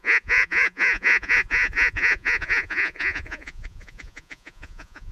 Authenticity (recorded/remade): remade